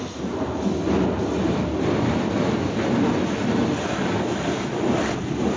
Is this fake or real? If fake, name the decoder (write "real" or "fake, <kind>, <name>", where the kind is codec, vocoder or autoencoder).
real